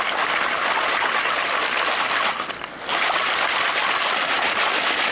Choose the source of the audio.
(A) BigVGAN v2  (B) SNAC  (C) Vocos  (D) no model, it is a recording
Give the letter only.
D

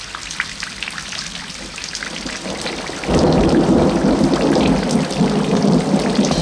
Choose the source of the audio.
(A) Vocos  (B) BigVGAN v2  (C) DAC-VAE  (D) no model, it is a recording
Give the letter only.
D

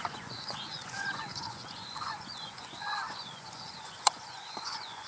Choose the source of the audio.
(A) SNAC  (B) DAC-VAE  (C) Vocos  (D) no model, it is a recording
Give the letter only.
C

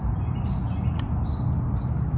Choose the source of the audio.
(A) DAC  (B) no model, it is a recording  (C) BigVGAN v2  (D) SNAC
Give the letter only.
B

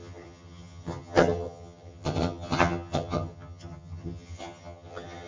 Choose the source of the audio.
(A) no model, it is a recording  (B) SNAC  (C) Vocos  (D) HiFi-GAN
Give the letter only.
D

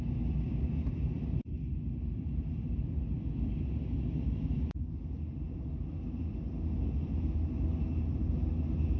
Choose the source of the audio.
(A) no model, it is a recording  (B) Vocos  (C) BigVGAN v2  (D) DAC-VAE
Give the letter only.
A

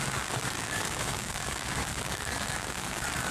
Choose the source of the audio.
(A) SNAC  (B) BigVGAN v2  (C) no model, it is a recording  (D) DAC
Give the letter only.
D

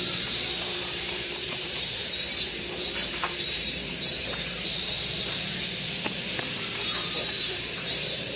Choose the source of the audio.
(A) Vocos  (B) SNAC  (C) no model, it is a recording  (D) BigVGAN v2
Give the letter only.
D